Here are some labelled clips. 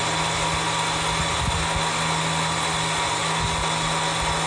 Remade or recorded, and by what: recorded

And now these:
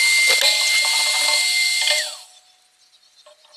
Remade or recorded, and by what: recorded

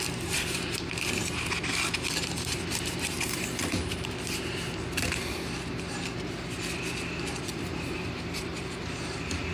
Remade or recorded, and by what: remade, vocoder, BigVGAN v2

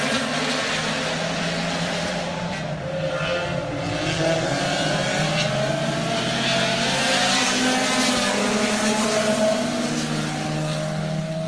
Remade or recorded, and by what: recorded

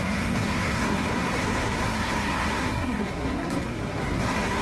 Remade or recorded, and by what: remade, codec, SNAC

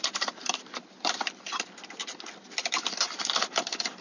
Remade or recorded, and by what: remade, vocoder, BigVGAN v2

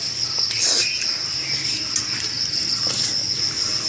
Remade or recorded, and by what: recorded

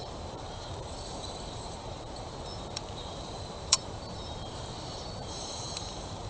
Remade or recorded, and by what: remade, vocoder, BigVGAN v2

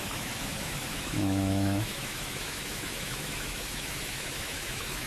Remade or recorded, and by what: remade, autoencoder, DAC-VAE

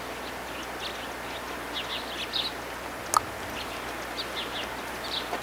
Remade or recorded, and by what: recorded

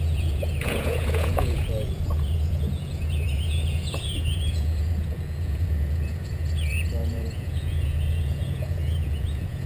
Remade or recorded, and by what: remade, vocoder, Vocos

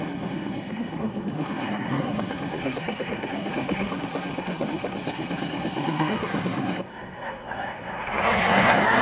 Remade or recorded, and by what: remade, codec, SNAC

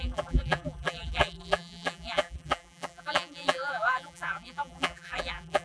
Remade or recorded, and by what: remade, vocoder, BigVGAN v2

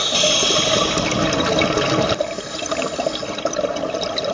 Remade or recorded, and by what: recorded